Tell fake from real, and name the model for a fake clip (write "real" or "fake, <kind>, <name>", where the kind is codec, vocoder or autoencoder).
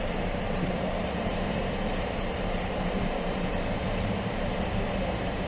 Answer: fake, vocoder, BigVGAN v2